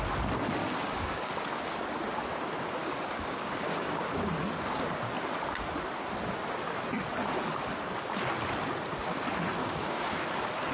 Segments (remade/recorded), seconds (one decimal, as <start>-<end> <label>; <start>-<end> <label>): 0.0-0.6 recorded; 0.6-1.3 remade; 1.3-2.8 recorded; 2.8-4.0 remade; 4.0-9.6 recorded; 9.6-10.1 remade; 10.1-10.7 recorded